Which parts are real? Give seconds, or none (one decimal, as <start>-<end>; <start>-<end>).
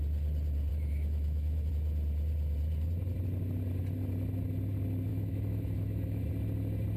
0.0-0.7; 1.7-5.1; 6.2-7.0